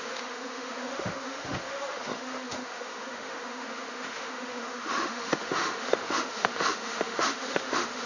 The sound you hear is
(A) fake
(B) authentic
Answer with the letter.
A